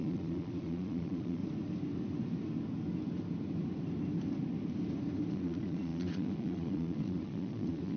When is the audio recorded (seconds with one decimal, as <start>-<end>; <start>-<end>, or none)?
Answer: 1.4-5.3